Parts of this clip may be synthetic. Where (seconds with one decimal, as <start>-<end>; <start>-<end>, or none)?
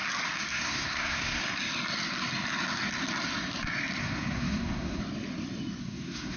0.5-1.4; 4.0-5.0; 5.8-6.4